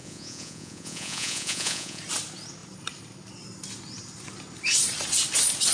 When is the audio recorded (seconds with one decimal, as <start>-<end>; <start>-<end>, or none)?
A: 2.0-5.7